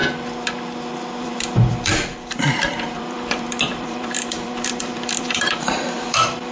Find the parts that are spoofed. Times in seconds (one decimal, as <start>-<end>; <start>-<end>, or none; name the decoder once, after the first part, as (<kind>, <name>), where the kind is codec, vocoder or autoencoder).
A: 1.2-6.5 (vocoder, BigVGAN v2)